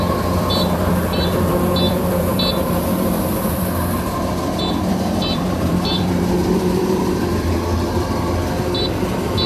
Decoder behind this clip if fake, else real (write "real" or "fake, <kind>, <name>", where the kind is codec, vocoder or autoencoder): fake, vocoder, BigVGAN v2